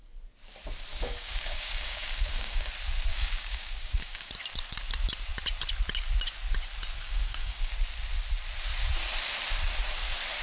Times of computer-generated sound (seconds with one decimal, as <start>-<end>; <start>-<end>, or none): 0.9-2.7; 3.1-4.3; 7.0-7.7